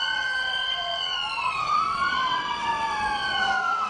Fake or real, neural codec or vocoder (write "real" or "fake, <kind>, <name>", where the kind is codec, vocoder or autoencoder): fake, vocoder, WaveNeXt